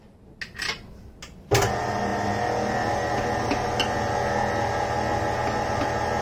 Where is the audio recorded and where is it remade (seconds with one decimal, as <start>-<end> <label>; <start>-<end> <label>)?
0.0-6.2 recorded